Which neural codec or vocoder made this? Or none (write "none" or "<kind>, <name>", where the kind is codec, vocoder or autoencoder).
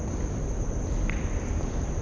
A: none